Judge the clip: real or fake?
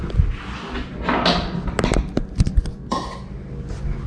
real